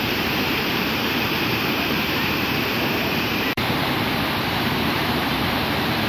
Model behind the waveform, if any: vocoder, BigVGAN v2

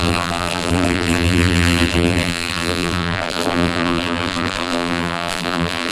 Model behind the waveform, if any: vocoder, BigVGAN v2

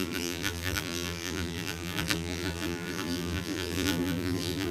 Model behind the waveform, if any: vocoder, BigVGAN v2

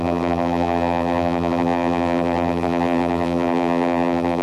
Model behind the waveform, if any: vocoder, BigVGAN v2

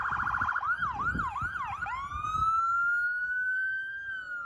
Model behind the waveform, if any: none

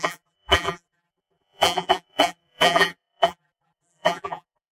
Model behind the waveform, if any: vocoder, BigVGAN v2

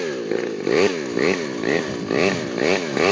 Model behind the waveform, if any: none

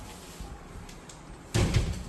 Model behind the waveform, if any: none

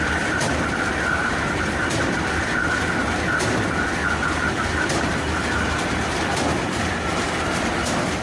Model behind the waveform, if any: vocoder, BigVGAN v2